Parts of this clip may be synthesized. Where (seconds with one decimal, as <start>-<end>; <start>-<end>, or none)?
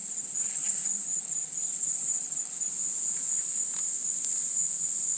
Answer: 0.0-2.7